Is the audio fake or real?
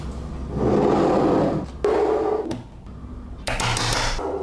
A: real